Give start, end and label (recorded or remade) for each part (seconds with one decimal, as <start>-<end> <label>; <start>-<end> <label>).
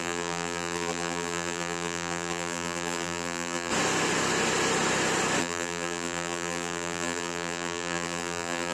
0.0-3.7 remade; 3.7-5.4 recorded; 5.4-8.7 remade